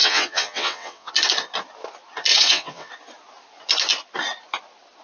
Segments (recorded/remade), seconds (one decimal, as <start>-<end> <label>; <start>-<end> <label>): 0.0-1.1 remade; 1.1-2.3 recorded; 2.3-2.9 remade; 2.9-5.0 recorded